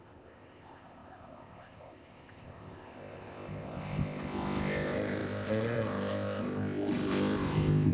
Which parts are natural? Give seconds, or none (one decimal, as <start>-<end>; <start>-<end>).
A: none